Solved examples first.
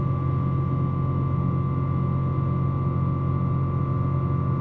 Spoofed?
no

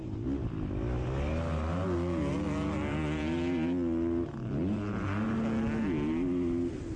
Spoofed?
no